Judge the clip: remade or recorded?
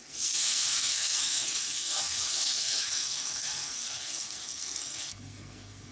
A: remade